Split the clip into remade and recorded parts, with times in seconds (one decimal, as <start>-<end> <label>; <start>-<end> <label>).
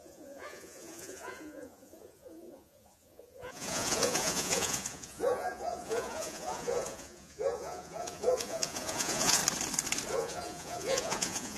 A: 0.0-9.4 remade; 9.4-10.1 recorded; 10.1-11.6 remade